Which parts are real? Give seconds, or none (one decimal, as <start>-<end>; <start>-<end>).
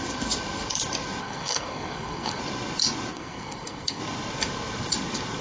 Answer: 0.0-1.2; 2.4-3.1; 4.0-5.4